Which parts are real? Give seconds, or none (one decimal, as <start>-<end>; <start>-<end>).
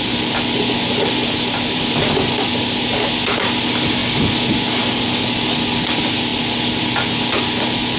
0.0-1.2; 1.8-8.0